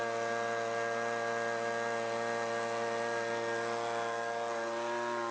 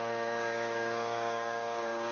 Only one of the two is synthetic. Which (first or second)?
second